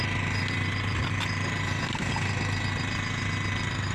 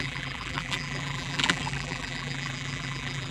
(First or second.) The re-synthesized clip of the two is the second